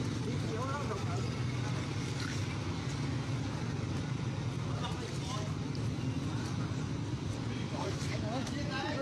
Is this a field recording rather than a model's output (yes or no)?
yes